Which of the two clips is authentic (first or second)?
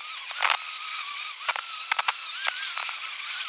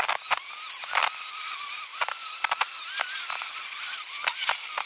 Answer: second